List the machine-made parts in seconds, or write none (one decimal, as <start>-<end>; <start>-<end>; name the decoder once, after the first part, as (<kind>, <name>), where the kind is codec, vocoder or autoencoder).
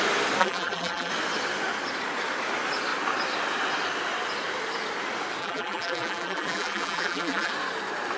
0.4-1.1 (vocoder, BigVGAN v2); 5.4-7.5